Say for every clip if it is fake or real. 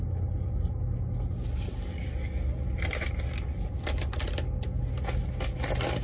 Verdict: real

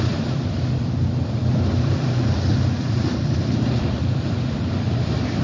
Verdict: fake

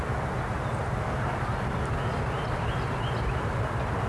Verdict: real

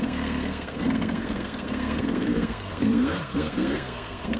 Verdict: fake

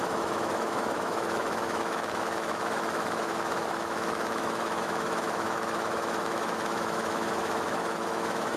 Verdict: fake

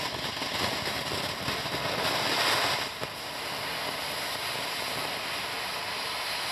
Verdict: real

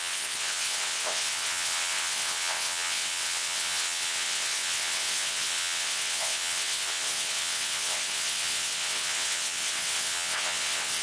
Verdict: fake